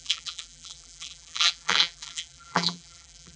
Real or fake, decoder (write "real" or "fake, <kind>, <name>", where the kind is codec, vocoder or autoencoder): fake, vocoder, BigVGAN v2